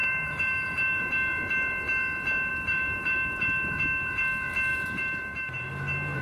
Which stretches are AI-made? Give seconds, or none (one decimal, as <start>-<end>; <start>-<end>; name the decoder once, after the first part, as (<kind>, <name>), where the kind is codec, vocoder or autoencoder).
0.0-1.1 (vocoder, BigVGAN v2); 2.5-3.4; 4.7-5.7